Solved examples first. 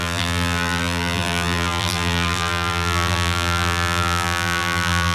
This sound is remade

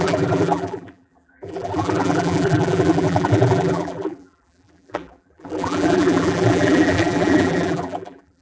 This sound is remade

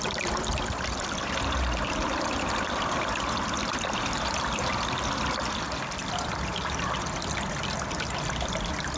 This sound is remade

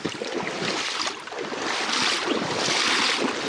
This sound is recorded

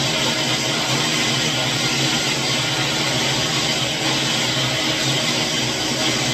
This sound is recorded